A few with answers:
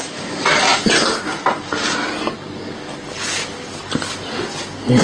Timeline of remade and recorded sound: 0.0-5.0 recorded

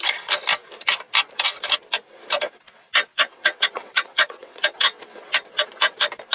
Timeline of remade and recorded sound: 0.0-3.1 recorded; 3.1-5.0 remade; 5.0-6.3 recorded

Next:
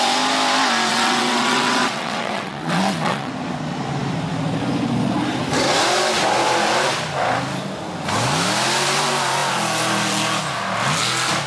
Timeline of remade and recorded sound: 0.0-0.9 recorded; 0.9-3.3 remade; 3.3-11.5 recorded